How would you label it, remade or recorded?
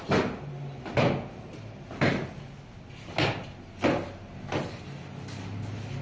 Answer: recorded